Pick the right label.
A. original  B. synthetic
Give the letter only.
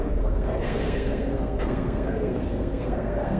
B